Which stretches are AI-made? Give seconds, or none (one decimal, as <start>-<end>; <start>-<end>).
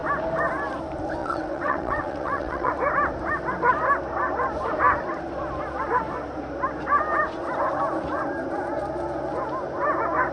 1.2-2.7